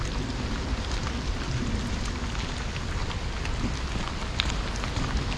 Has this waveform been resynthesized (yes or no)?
no